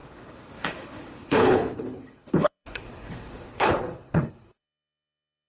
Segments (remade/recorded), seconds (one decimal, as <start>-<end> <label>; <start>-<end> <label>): 0.0-5.5 remade